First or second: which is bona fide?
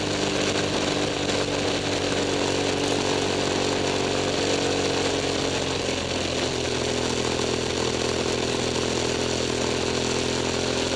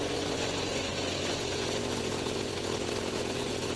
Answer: first